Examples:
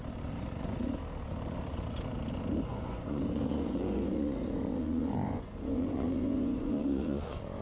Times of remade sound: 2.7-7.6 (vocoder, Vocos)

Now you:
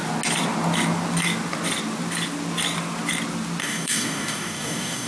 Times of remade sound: 3.6-5.1 (codec, DAC)

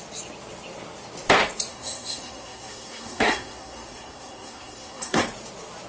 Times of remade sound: 1.7-5.2 (codec, SNAC)

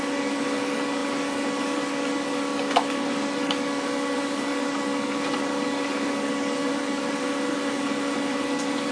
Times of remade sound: 0.0-8.9 (codec, DAC)